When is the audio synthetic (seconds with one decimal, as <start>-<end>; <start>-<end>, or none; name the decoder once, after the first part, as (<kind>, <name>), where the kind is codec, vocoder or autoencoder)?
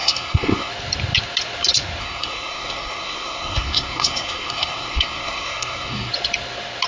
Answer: 0.0-0.7 (codec, SNAC); 2.0-6.1